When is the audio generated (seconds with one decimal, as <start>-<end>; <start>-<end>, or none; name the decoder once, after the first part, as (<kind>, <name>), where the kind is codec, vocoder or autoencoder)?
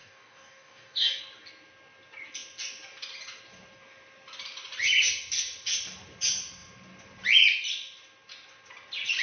0.0-1.2 (codec, DAC)